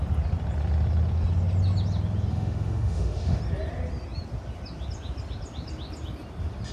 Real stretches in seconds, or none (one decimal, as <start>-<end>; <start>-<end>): 0.0-2.3; 3.4-6.7